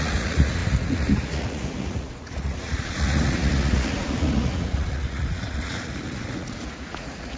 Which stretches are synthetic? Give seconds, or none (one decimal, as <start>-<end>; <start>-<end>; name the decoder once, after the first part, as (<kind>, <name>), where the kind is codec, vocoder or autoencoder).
0.0-7.4 (vocoder, Vocos)